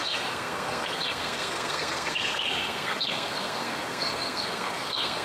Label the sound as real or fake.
fake